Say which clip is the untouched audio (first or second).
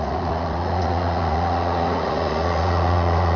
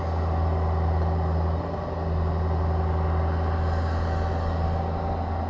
second